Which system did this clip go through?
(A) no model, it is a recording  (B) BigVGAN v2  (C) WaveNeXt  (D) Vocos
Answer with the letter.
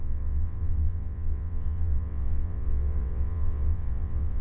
C